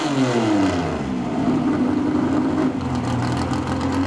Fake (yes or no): no